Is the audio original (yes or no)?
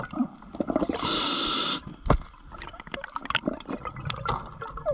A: yes